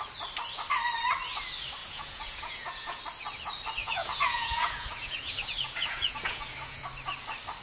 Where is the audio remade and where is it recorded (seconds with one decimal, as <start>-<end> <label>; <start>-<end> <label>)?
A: 0.0-1.8 recorded; 1.8-3.0 remade; 3.0-3.8 recorded; 3.8-6.8 remade; 6.8-7.6 recorded